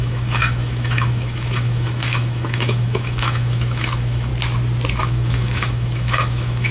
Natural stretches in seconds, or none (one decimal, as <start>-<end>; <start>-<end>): 4.3-5.0